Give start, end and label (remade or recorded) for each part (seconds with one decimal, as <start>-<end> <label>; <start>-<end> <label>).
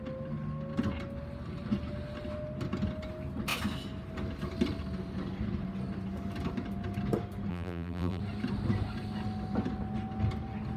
0.0-7.5 recorded; 7.5-8.2 remade; 8.2-10.8 recorded